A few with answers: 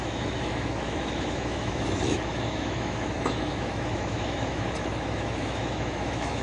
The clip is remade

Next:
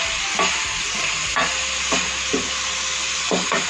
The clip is recorded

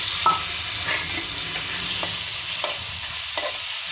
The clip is recorded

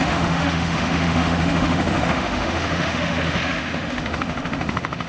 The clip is remade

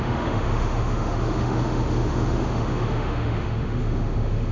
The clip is remade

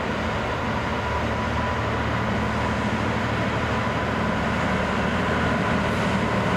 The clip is recorded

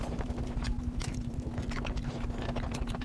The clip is recorded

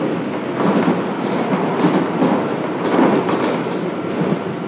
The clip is recorded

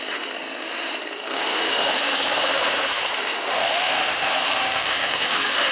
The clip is remade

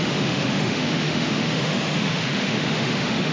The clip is remade